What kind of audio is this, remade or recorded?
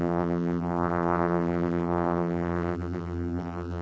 remade